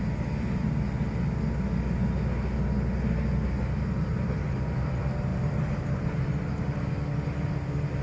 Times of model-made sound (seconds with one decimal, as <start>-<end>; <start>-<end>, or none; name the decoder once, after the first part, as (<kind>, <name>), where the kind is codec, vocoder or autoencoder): none